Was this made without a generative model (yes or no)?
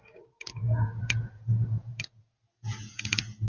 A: no